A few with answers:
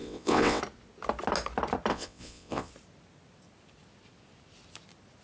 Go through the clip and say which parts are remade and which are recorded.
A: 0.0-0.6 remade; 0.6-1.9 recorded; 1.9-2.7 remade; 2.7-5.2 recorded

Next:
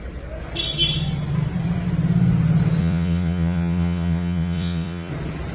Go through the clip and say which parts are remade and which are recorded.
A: 0.0-2.8 recorded; 2.8-5.1 remade; 5.1-5.5 recorded

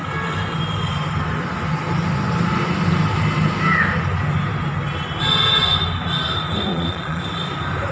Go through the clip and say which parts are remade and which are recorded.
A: 0.0-6.7 recorded; 6.7-7.2 remade; 7.2-7.9 recorded

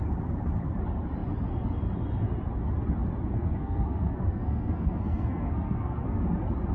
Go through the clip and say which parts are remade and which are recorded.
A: 0.0-3.3 recorded; 3.3-6.2 remade; 6.2-6.7 recorded

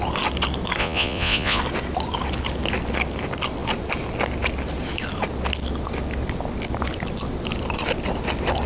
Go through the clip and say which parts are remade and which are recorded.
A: 0.0-0.8 recorded; 0.8-1.6 remade; 1.6-8.7 recorded

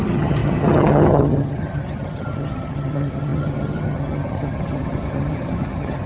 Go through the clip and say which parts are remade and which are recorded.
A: 0.0-6.1 remade